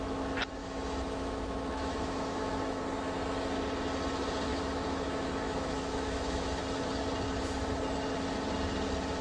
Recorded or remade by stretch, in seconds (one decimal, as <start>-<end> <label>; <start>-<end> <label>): 0.0-0.6 recorded; 0.6-2.8 remade; 2.8-4.5 recorded; 4.5-6.6 remade; 6.6-9.2 recorded